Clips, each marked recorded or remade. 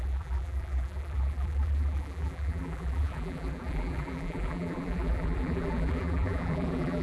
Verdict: remade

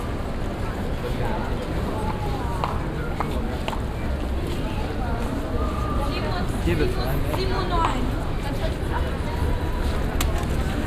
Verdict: recorded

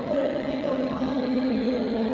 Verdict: remade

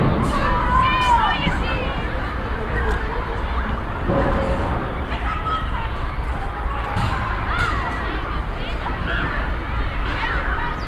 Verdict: remade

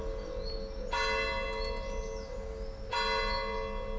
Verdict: recorded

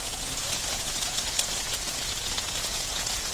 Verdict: remade